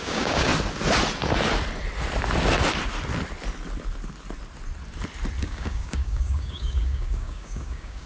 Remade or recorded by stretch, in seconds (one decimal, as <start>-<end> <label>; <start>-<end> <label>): 0.0-0.5 remade; 0.5-5.4 recorded; 5.4-8.1 remade